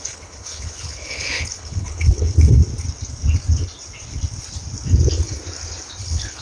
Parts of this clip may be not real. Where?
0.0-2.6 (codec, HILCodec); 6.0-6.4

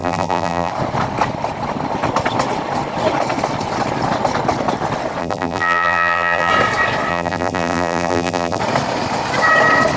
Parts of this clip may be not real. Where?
0.0-0.7 (vocoder, BigVGAN v2); 5.2-6.5; 7.1-8.6

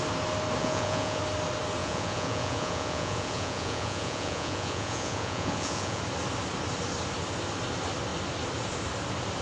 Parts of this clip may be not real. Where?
0.6-1.2 (vocoder, Vocos); 1.8-6.0